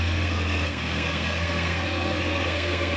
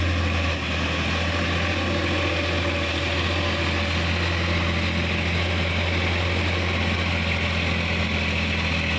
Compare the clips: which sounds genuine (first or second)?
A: second